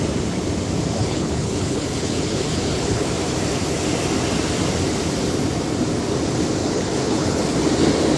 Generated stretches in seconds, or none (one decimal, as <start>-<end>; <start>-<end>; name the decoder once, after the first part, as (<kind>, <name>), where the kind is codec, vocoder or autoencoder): 1.0-3.1 (codec, HILCodec); 6.6-7.4